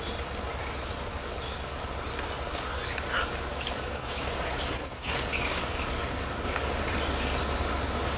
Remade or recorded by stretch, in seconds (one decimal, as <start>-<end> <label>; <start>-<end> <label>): 0.0-1.1 recorded; 1.1-1.9 remade; 1.9-3.5 recorded; 3.5-6.8 remade; 6.8-8.2 recorded